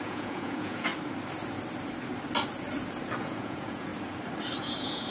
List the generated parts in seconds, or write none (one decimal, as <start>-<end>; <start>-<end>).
0.0-0.9; 3.2-3.9; 4.6-5.1